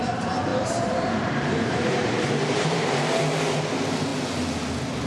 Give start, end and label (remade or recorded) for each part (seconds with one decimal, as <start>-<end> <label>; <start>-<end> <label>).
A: 0.0-0.5 recorded; 0.5-3.2 remade; 3.2-5.1 recorded